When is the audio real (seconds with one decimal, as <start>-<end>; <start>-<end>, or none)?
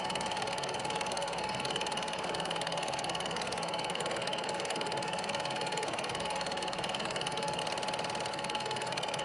7.6-8.3